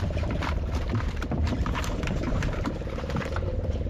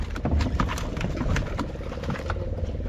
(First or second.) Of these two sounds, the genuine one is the second